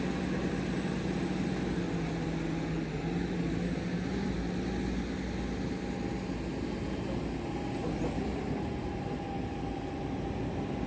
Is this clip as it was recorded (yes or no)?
yes